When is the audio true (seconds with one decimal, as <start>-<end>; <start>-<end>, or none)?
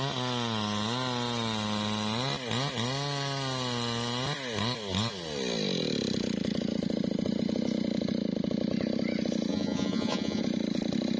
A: 0.0-9.5; 10.4-11.2